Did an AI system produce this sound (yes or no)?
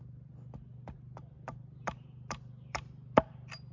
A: no